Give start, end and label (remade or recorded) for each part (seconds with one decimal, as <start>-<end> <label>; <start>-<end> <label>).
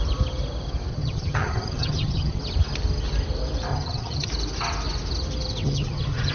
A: 0.0-0.9 recorded; 0.9-2.4 remade; 2.4-3.7 recorded; 3.7-4.3 remade; 4.3-5.6 recorded; 5.6-6.3 remade